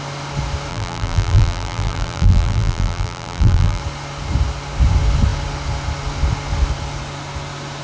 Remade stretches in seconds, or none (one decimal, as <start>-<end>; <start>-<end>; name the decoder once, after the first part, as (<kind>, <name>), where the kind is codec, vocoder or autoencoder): 0.7-3.8 (vocoder, BigVGAN v2)